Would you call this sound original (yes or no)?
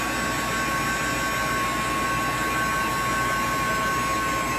yes